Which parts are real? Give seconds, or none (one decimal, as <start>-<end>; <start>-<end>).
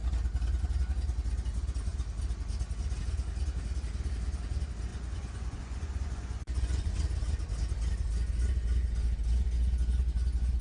0.0-4.9; 6.9-10.6